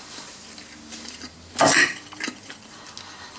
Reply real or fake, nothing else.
real